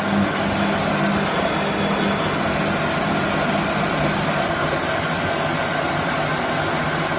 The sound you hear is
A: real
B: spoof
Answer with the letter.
A